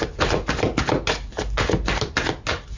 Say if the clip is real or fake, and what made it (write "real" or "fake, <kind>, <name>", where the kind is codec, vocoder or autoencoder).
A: real